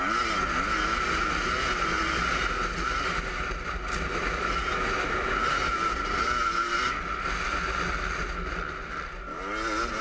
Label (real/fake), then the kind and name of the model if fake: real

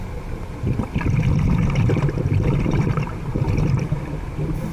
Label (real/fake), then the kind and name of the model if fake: fake, vocoder, BigVGAN v2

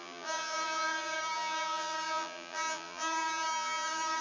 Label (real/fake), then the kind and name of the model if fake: fake, vocoder, BigVGAN v2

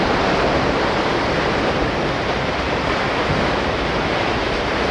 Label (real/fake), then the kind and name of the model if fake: real